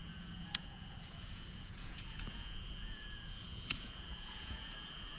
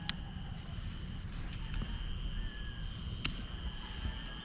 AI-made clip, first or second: first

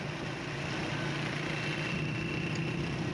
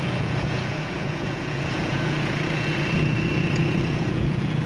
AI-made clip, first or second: second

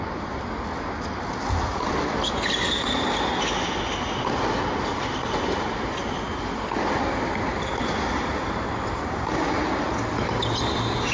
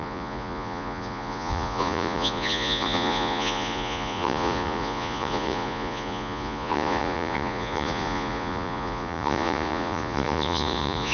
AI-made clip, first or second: second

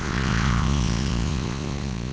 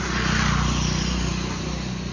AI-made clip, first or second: first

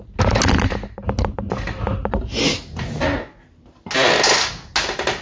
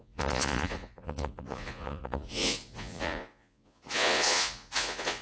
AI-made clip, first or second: second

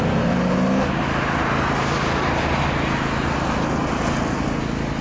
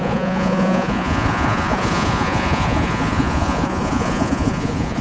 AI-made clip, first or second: second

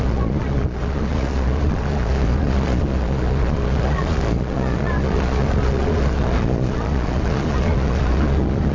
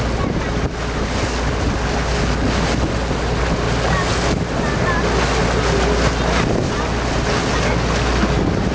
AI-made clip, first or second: first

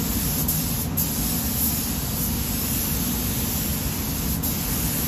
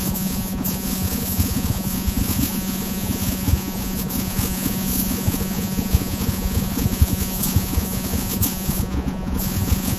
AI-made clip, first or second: second